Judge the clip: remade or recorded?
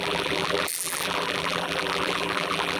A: remade